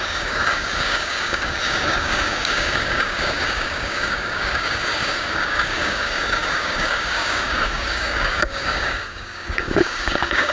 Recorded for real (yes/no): no